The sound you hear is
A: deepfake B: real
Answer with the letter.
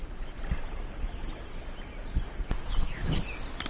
B